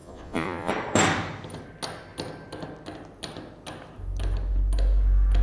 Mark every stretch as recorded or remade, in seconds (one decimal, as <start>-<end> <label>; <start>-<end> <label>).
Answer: 0.0-0.7 remade; 0.7-5.4 recorded